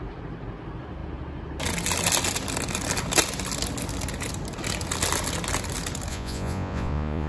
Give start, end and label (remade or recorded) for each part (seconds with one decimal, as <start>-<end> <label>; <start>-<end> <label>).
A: 0.0-6.1 recorded; 6.1-7.3 remade

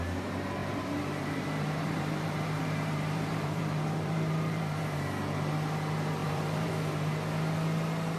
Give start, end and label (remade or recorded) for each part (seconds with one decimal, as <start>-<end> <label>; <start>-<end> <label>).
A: 0.0-0.6 recorded; 0.6-5.1 remade; 5.1-6.2 recorded; 6.2-6.7 remade; 6.7-8.2 recorded

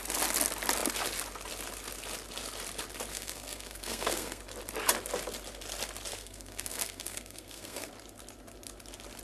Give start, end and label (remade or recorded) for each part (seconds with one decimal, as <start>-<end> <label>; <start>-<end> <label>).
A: 0.0-3.1 recorded; 3.1-4.4 remade; 4.4-6.1 recorded; 6.1-7.9 remade; 7.9-9.2 recorded

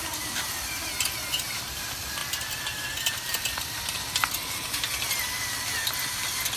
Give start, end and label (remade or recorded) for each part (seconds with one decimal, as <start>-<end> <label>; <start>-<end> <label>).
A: 0.0-2.2 remade; 2.2-6.6 recorded